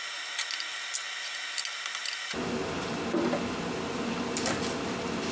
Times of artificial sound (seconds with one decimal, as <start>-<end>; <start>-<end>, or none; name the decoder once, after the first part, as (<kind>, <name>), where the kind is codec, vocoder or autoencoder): none